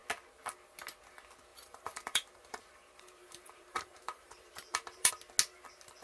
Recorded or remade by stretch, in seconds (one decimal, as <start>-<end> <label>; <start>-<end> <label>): 0.0-1.5 recorded; 1.5-5.1 remade; 5.1-6.0 recorded